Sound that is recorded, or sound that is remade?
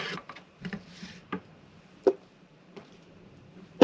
remade